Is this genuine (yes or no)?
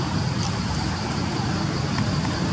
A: yes